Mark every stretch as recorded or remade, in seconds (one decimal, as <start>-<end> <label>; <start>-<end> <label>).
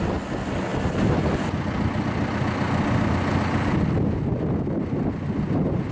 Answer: 0.0-5.9 recorded